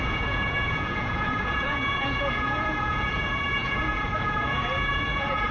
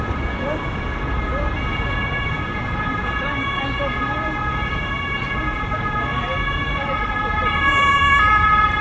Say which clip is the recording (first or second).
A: second